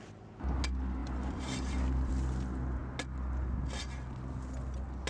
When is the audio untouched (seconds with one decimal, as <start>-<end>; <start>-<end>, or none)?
0.0-1.0; 2.1-5.1